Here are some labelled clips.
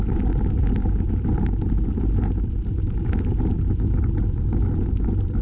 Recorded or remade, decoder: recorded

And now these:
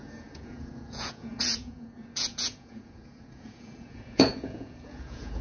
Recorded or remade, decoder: remade, vocoder, Vocos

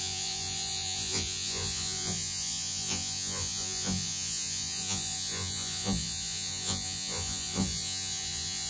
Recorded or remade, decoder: remade, vocoder, Vocos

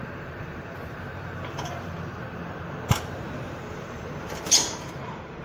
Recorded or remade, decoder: remade, vocoder, BigVGAN v2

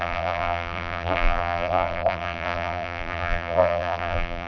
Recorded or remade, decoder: remade, vocoder, BigVGAN v2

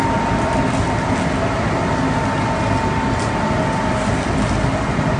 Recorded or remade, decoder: recorded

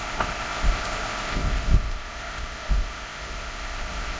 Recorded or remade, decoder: remade, codec, ZipCodec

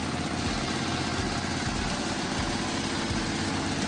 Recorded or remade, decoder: recorded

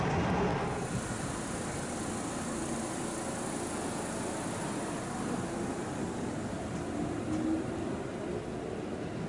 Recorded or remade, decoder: recorded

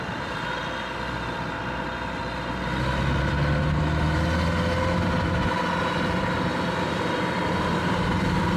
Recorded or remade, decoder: recorded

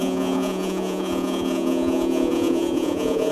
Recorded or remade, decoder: remade, vocoder, Vocos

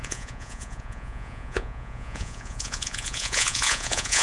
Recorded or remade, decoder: remade, vocoder, Vocos